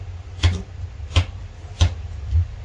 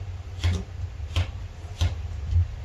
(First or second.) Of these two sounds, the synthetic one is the second